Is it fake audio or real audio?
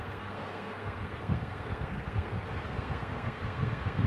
fake